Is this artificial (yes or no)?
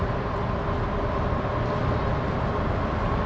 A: no